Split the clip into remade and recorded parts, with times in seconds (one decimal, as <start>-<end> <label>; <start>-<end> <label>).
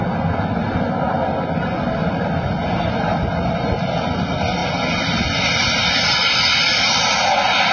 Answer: 0.0-4.6 remade; 4.6-7.7 recorded